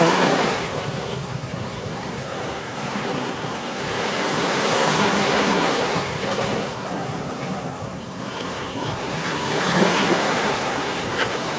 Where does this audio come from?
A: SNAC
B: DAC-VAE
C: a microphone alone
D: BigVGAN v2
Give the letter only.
A